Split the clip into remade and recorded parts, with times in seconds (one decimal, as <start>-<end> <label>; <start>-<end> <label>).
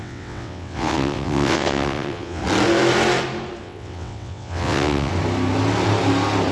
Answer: 0.0-2.4 remade; 2.4-3.6 recorded; 3.6-5.1 remade; 5.1-6.5 recorded